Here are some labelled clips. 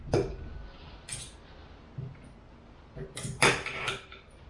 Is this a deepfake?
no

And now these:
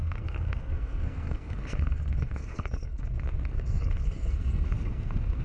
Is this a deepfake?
yes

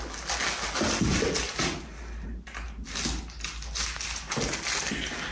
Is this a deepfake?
no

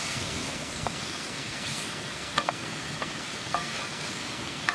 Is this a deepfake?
yes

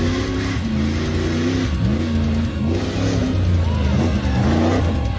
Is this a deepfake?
no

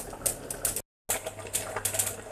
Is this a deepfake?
no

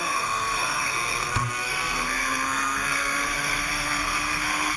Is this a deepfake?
yes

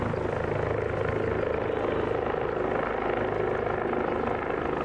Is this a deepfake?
no